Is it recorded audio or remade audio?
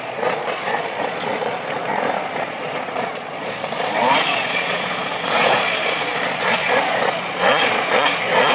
remade